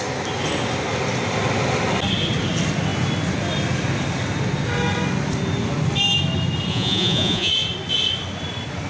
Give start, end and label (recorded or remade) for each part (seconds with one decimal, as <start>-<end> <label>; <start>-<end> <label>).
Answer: 0.0-6.7 recorded; 6.7-7.5 remade; 7.5-8.9 recorded